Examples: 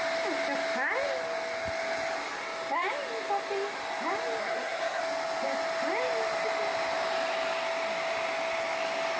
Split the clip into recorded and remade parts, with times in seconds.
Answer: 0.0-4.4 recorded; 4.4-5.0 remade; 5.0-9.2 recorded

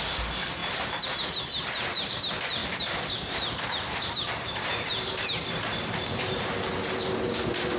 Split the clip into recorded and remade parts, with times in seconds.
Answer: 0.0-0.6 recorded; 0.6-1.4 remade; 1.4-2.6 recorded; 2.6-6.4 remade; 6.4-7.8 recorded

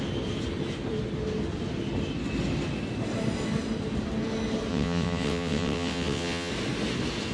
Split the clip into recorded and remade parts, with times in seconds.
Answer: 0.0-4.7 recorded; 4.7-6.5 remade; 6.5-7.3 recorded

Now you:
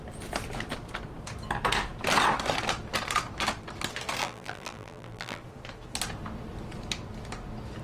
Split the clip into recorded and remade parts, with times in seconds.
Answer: 0.0-4.2 recorded; 4.2-5.4 remade; 5.4-7.8 recorded